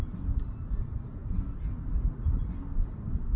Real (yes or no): yes